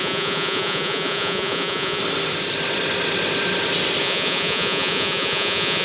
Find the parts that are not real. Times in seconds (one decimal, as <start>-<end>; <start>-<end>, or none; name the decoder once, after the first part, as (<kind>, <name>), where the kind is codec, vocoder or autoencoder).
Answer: 0.0-2.0 (vocoder, Vocos); 4.0-5.8